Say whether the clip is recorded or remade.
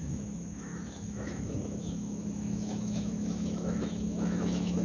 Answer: remade